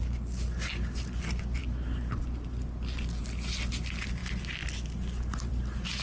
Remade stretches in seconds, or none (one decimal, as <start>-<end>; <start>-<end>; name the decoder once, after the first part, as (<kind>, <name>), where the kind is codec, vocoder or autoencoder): none